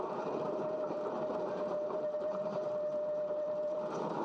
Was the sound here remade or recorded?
remade